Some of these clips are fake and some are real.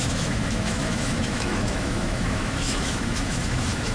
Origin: fake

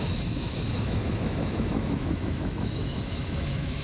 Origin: fake